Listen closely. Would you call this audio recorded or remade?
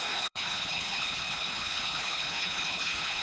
remade